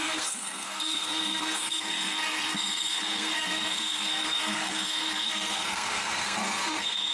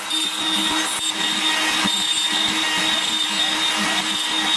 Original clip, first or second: second